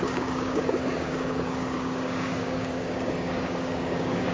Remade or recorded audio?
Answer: remade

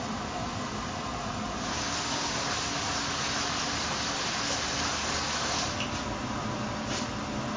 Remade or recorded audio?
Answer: recorded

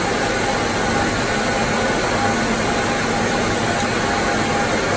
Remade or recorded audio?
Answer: recorded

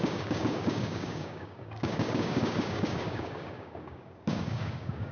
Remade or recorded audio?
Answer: remade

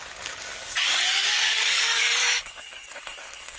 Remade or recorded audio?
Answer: remade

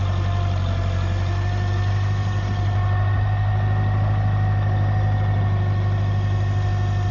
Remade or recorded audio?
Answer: recorded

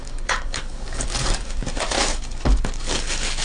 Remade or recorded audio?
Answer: remade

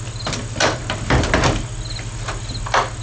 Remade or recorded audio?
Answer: recorded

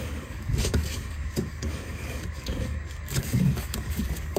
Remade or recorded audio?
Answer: remade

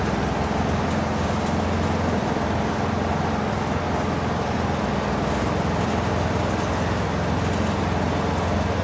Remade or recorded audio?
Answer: recorded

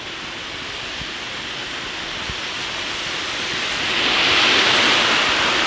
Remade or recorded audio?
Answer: recorded